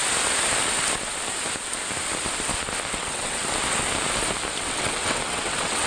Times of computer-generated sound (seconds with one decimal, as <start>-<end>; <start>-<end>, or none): 2.9-3.4; 4.6-5.9